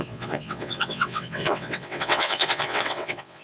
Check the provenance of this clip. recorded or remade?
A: remade